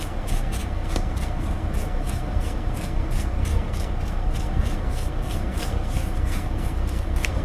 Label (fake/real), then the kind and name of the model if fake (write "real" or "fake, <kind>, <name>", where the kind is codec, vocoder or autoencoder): fake, codec, SNAC